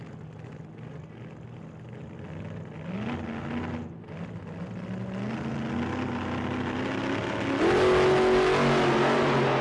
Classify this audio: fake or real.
real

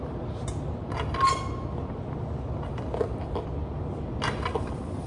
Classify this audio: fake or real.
real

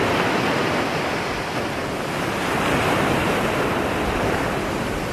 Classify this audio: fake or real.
real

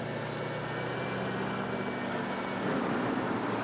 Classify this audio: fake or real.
real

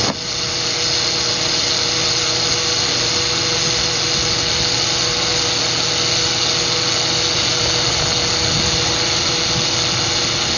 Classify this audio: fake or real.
real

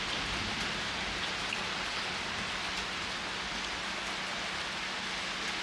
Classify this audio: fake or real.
real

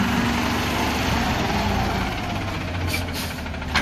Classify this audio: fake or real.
real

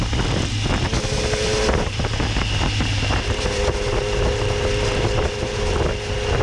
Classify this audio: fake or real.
real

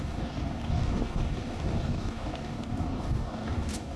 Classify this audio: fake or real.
fake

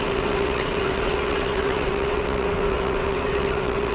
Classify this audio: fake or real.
fake